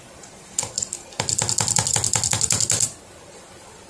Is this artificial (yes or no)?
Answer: no